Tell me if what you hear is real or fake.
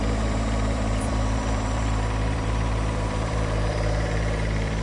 fake